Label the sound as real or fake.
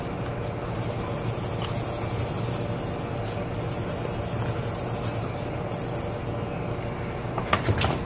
real